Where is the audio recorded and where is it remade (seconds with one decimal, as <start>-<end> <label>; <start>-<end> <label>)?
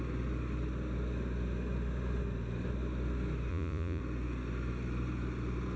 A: 0.0-3.5 recorded; 3.5-4.0 remade; 4.0-5.8 recorded